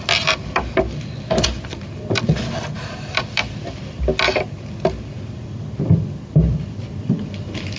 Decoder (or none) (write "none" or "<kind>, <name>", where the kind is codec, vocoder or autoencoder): none